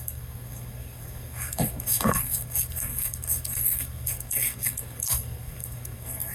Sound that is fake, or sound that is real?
fake